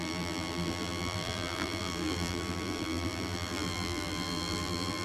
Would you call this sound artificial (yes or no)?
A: yes